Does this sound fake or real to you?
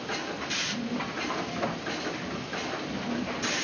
real